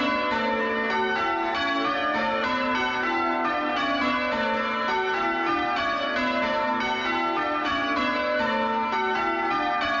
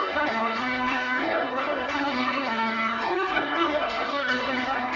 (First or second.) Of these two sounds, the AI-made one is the second